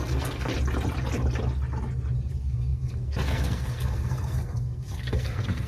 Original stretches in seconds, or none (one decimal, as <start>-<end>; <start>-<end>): 0.5-2.3

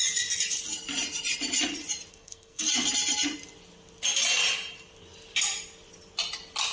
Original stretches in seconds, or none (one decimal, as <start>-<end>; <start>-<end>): 0.0-2.1; 2.6-6.7

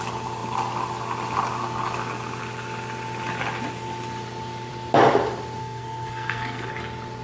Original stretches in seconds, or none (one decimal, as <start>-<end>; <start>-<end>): 0.0-5.6; 6.7-7.2